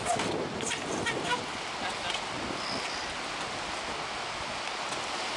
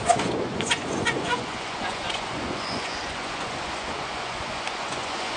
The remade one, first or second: second